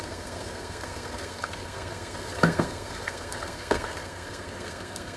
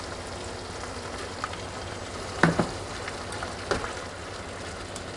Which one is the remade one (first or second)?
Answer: first